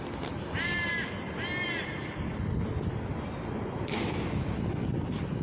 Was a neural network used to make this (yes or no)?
no